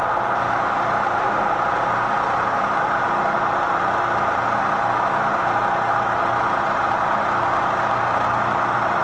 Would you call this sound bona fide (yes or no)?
yes